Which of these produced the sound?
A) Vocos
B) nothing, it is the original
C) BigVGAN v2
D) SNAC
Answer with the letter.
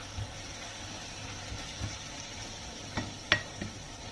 B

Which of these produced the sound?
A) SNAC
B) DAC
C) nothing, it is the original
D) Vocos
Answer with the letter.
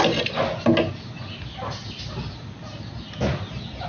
C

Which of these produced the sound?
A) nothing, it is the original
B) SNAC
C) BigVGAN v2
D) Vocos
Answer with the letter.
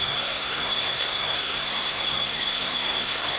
B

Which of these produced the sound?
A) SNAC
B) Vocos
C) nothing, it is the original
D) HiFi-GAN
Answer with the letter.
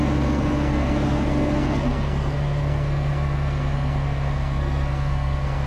A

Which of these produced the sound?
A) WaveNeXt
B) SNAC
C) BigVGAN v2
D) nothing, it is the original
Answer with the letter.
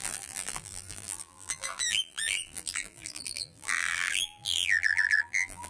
C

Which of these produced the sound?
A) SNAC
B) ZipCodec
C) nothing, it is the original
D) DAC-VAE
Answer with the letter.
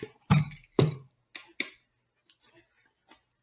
C